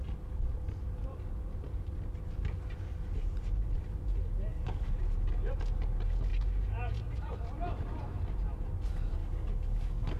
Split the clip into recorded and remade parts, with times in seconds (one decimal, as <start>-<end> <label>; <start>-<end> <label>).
0.0-4.5 recorded; 4.5-5.0 remade; 5.0-9.2 recorded; 9.2-10.2 remade